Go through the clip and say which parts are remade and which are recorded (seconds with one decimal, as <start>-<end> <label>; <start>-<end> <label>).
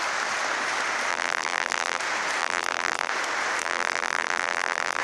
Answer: 0.0-1.1 recorded; 1.1-2.0 remade; 2.0-2.4 recorded; 2.4-3.1 remade; 3.1-3.6 recorded; 3.6-5.0 remade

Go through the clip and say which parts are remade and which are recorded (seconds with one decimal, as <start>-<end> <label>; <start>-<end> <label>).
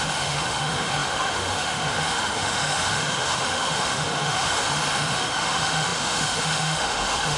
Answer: 0.0-7.4 remade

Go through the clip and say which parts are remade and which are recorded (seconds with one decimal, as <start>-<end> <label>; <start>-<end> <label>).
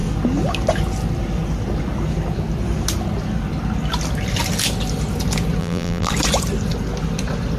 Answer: 0.0-5.6 recorded; 5.6-6.1 remade; 6.1-7.6 recorded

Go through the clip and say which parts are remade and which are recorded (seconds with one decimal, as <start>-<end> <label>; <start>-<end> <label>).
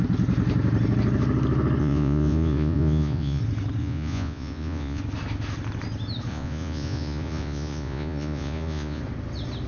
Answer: 0.0-1.8 recorded; 1.8-3.4 remade; 3.4-3.8 recorded; 3.8-5.0 remade; 5.0-6.3 recorded; 6.3-9.0 remade; 9.0-9.7 recorded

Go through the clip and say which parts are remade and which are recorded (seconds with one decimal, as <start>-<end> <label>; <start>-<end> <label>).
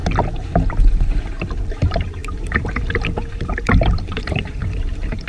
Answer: 0.0-1.6 recorded; 1.6-5.3 remade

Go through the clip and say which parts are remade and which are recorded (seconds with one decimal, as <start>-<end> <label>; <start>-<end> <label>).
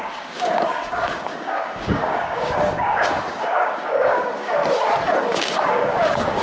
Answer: 0.0-4.6 remade; 4.6-5.2 recorded; 5.2-6.4 remade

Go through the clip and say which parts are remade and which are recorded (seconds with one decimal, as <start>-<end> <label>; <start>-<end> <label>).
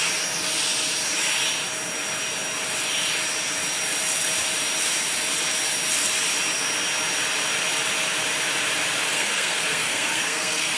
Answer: 0.0-9.1 recorded; 9.1-10.8 remade